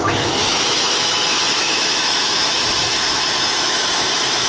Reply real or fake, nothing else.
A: fake